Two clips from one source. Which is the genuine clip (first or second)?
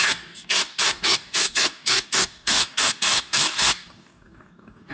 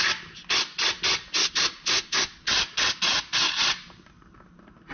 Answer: second